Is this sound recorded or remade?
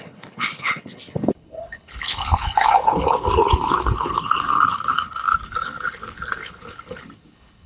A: remade